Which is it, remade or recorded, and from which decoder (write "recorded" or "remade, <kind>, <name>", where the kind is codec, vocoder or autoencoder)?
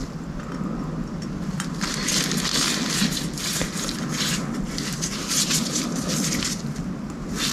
recorded